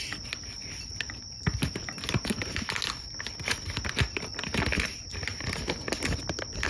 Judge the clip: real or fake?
real